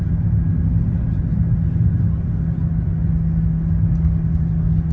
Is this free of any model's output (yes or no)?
yes